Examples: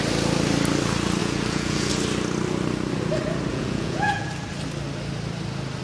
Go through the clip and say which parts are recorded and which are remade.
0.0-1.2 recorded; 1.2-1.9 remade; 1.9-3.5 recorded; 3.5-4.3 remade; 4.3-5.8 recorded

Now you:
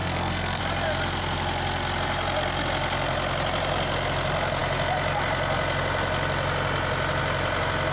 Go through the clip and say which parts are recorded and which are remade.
0.0-0.6 remade; 0.6-7.9 recorded

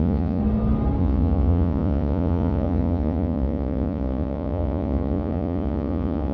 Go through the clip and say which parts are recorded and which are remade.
0.0-0.4 remade; 0.4-1.0 recorded; 1.0-6.3 remade

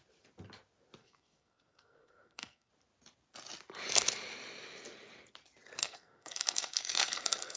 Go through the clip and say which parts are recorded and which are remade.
0.0-1.0 recorded; 1.0-2.7 remade; 2.7-5.8 recorded; 5.8-7.6 remade